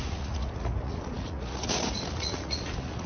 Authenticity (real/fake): fake